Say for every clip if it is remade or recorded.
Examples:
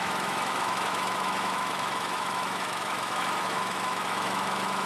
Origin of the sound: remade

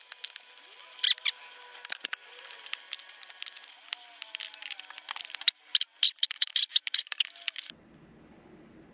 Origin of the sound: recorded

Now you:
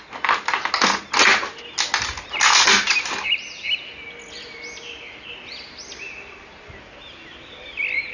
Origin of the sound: recorded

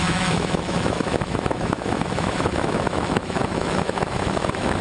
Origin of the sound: remade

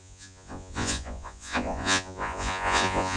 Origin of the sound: remade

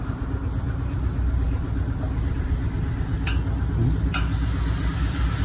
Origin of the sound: recorded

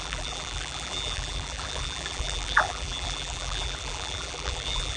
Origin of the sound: remade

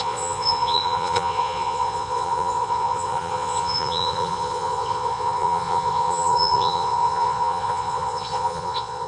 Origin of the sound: remade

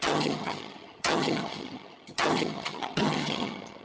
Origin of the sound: remade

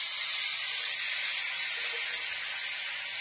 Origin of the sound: recorded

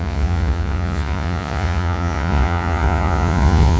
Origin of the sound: remade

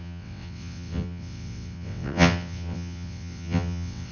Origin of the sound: remade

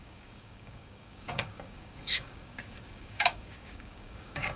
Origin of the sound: remade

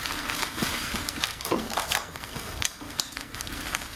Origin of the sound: remade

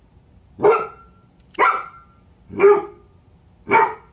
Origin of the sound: recorded